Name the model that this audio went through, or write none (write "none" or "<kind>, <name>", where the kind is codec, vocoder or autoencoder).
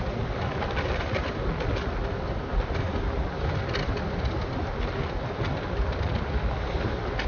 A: none